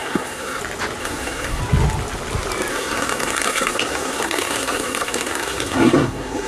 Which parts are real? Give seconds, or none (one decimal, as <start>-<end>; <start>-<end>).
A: 0.6-1.0; 1.6-2.7